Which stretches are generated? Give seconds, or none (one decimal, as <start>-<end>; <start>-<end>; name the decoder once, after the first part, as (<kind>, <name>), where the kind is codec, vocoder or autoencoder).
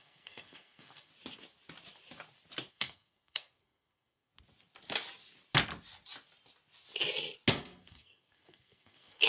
0.0-1.1 (codec, SNAC); 2.7-4.3; 7.5-9.3